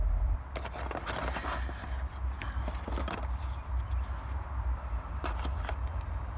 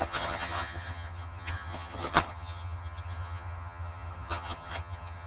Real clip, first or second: first